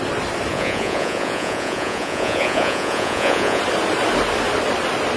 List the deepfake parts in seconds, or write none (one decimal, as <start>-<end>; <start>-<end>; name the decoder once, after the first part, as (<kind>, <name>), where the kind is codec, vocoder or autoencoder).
0.5-3.6 (vocoder, Vocos)